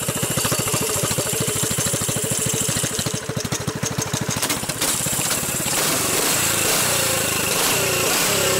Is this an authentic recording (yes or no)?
no